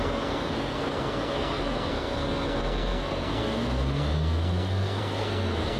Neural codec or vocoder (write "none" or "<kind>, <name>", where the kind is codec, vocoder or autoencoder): codec, SNAC